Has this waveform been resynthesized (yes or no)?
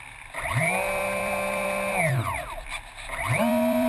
yes